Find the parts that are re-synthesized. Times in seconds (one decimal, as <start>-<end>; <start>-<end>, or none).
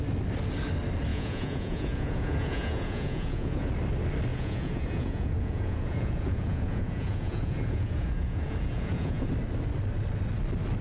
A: 1.1-3.7; 4.3-9.3